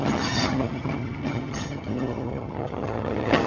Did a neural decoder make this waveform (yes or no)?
yes